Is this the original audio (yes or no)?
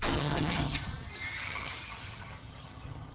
no